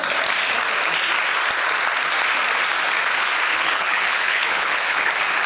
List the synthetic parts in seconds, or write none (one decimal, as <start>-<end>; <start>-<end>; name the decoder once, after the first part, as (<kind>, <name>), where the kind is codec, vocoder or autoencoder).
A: 3.5-5.1 (codec, HILCodec)